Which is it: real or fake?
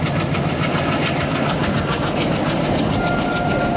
real